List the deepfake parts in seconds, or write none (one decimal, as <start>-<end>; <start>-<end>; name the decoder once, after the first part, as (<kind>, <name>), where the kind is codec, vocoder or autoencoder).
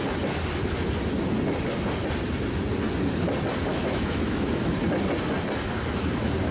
3.7-4.6 (autoencoder, DAC-VAE)